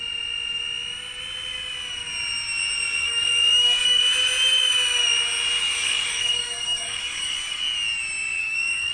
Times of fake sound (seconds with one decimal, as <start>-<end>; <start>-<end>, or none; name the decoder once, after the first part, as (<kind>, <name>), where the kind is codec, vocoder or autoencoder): 3.0-4.0 (codec, DAC); 5.6-7.6; 8.4-8.9